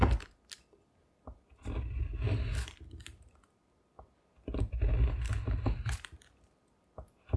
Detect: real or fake real